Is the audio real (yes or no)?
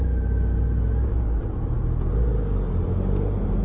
yes